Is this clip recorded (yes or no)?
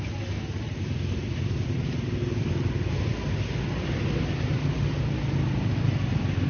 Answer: yes